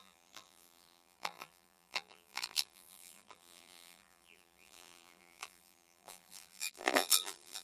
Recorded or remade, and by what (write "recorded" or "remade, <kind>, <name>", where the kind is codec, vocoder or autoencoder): remade, vocoder, BigVGAN v2